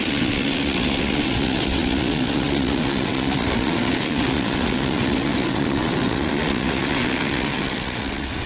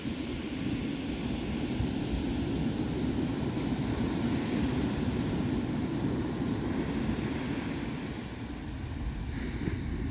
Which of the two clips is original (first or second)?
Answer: second